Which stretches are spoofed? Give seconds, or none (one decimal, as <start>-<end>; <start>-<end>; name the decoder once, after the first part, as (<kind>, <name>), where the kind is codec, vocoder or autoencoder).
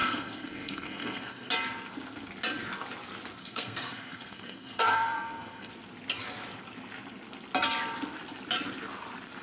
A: 0.0-1.5 (codec, SNAC); 3.4-5.7